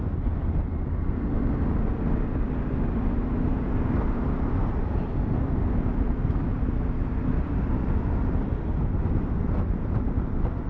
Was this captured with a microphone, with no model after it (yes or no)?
yes